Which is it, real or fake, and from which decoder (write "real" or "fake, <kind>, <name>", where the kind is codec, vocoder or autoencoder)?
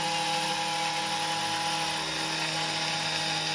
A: real